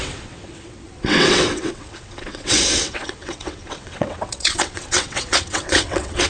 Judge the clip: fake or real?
fake